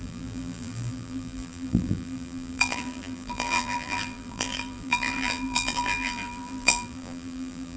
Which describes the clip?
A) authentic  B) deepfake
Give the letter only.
B